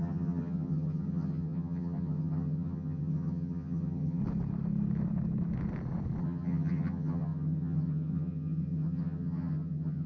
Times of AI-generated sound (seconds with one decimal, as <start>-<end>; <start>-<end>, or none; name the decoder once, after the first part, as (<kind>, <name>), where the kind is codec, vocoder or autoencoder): 0.0-4.2 (vocoder, HiFi-GAN); 6.2-10.1